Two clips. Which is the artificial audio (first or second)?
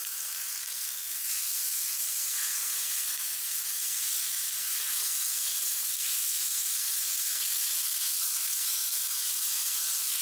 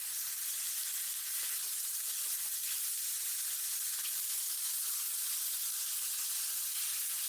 first